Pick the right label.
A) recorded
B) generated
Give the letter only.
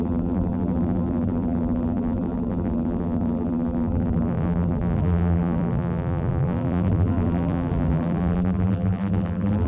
B